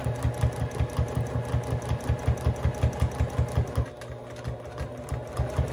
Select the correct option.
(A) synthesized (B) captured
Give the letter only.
B